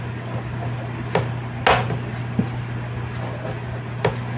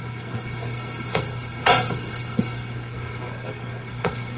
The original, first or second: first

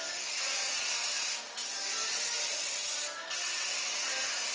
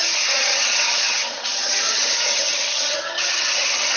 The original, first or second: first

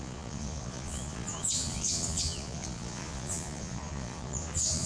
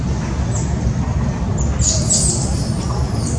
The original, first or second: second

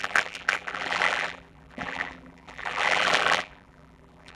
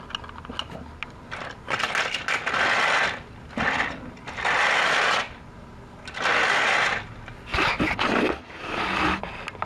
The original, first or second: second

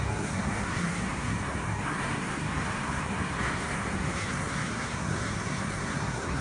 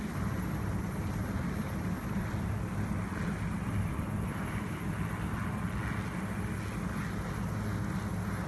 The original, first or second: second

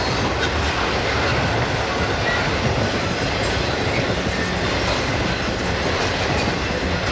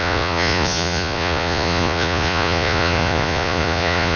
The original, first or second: first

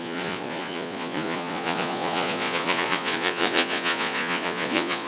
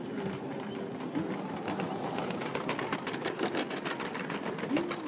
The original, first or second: second